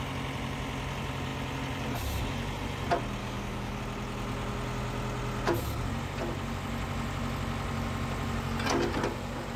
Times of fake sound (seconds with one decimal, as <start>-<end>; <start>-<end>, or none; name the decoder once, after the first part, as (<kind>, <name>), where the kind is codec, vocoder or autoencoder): 3.2-3.8 (codec, DAC)